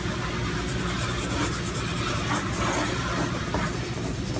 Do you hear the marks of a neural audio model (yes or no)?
no